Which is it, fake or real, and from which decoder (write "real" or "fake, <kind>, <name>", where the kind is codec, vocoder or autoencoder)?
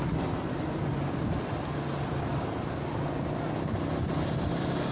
real